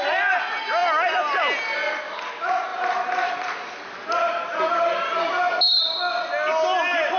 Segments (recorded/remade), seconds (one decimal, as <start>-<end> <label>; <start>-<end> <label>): 0.0-7.2 recorded